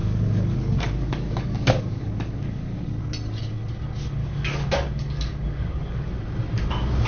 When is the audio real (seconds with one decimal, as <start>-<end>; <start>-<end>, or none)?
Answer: 2.8-4.2; 6.1-7.1